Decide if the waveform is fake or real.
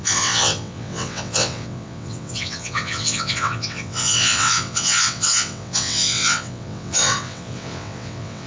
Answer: fake